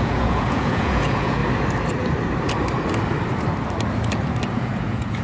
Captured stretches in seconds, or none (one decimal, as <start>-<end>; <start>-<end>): 1.4-4.5